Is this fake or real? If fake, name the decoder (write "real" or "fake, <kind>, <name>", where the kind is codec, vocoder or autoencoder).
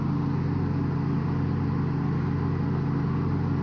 real